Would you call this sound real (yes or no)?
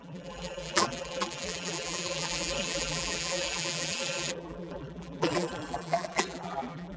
no